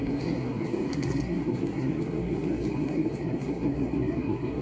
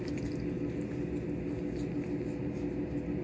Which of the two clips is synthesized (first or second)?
first